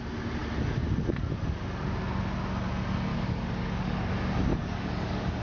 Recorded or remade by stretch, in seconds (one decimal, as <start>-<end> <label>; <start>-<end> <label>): 0.0-3.1 recorded; 3.1-4.1 remade; 4.1-4.5 recorded; 4.5-5.4 remade

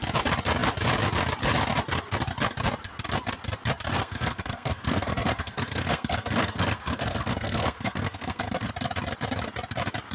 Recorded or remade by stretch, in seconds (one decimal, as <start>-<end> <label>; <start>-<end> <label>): 0.0-3.9 recorded; 3.9-8.7 remade; 8.7-10.1 recorded

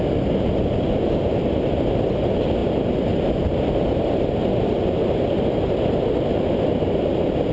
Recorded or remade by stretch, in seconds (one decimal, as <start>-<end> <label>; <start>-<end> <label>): 0.0-7.5 recorded

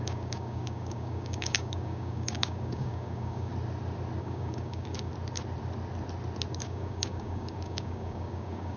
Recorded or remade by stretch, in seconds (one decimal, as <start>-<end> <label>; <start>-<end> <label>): 0.0-3.5 remade; 3.5-4.2 recorded; 4.2-5.1 remade; 5.1-6.5 recorded; 6.5-8.8 remade